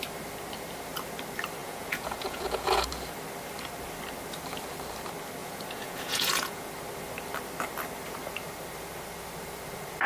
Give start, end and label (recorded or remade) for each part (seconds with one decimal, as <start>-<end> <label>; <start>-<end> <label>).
0.0-1.6 recorded; 1.6-2.9 remade; 2.9-5.4 recorded; 5.4-6.7 remade; 6.7-10.1 recorded